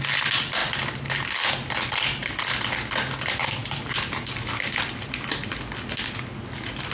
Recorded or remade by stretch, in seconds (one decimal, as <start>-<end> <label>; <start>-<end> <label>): 0.0-6.9 recorded